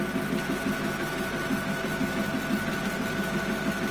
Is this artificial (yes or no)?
no